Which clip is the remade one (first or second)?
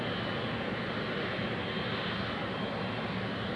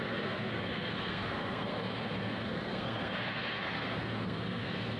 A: second